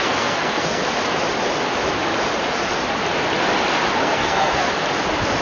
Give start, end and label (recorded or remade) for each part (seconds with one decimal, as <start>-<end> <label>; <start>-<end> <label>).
0.0-0.8 remade; 0.8-4.0 recorded; 4.0-4.7 remade; 4.7-5.4 recorded